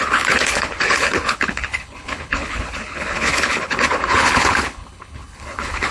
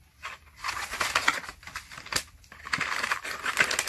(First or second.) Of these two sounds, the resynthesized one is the first